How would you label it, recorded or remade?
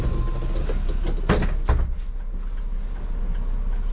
recorded